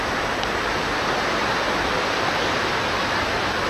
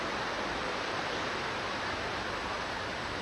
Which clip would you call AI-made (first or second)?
second